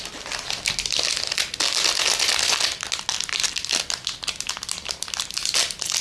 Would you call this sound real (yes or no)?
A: yes